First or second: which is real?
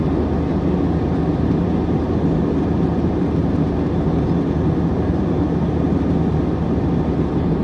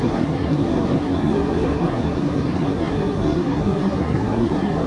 first